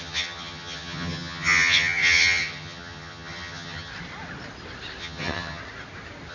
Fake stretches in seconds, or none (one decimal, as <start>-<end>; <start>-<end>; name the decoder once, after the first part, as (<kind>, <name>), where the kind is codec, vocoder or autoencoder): 0.0-3.9 (vocoder, HiFi-GAN); 5.0-5.6